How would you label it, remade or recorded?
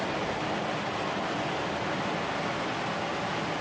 recorded